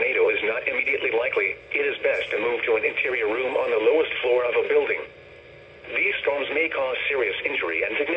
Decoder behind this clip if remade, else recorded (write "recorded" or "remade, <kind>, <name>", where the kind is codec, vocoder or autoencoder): recorded